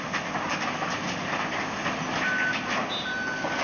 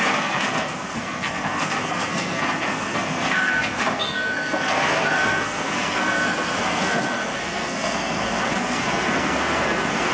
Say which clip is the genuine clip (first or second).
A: first